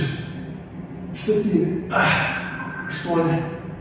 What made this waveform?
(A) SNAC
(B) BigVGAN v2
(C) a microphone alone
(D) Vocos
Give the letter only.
C